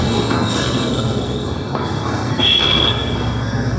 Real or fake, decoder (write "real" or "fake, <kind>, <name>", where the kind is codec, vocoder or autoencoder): fake, codec, SNAC